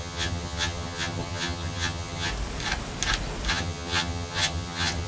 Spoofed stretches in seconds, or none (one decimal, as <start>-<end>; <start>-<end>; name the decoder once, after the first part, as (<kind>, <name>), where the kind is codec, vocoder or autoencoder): 0.0-2.3 (vocoder, HiFi-GAN); 3.5-5.1